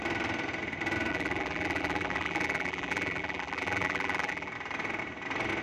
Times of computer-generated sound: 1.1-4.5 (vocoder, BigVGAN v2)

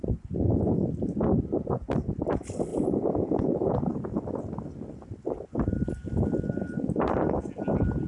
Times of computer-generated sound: none

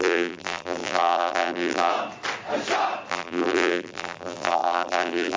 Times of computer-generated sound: 0.0-1.9 (vocoder, BigVGAN v2); 3.1-5.4

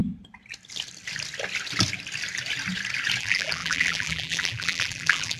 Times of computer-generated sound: 3.2-5.4 (vocoder, BigVGAN v2)